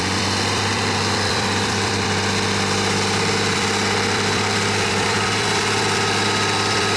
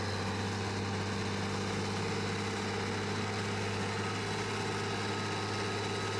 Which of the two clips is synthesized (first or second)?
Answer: first